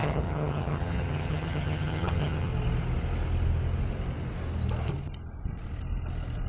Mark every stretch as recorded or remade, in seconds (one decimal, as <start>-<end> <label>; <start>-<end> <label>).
0.0-2.5 remade; 2.5-6.5 recorded